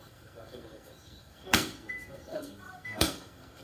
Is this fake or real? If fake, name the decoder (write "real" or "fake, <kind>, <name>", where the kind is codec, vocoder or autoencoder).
fake, codec, SNAC